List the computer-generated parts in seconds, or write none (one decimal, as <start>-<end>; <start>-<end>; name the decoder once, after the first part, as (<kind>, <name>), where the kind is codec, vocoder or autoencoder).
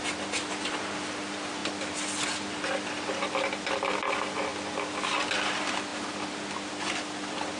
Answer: none